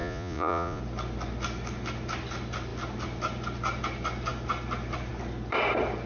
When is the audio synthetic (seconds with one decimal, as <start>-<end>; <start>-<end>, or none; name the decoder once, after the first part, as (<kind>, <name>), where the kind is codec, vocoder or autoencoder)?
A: 0.0-0.8 (vocoder, Vocos)